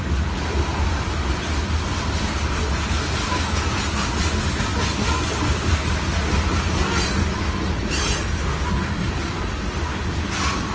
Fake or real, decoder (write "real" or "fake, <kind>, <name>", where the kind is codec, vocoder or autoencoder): real